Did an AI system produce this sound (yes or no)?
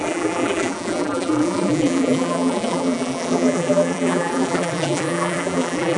yes